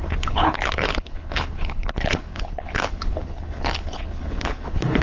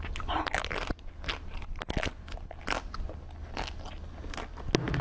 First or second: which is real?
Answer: second